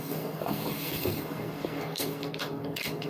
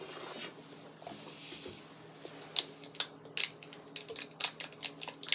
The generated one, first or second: first